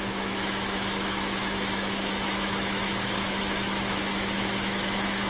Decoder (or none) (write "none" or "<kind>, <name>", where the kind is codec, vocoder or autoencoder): autoencoder, DAC-VAE